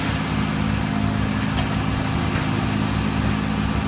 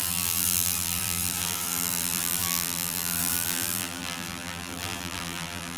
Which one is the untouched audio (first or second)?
first